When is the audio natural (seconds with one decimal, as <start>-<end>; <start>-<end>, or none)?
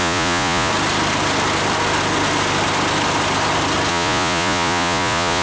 0.7-3.9